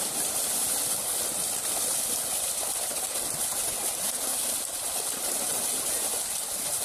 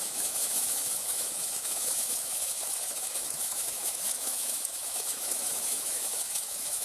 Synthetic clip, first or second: second